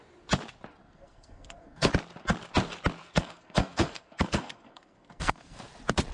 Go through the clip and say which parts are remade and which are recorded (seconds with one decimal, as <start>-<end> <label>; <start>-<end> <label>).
0.0-0.8 recorded; 0.8-1.9 remade; 1.9-3.0 recorded; 3.0-5.6 remade; 5.6-6.1 recorded